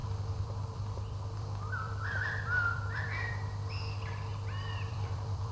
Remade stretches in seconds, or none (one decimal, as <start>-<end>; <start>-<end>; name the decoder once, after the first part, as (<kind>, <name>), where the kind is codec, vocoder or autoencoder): 0.0-3.3 (vocoder, BigVGAN v2); 4.3-5.5